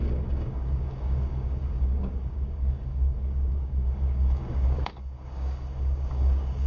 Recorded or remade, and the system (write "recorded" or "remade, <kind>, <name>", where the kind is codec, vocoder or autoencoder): remade, codec, DAC